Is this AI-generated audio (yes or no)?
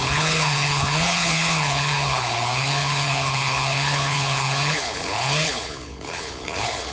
yes